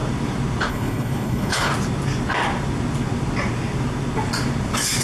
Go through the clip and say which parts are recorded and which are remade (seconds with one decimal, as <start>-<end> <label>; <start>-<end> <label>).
0.0-0.7 recorded; 0.7-1.7 remade; 1.7-5.0 recorded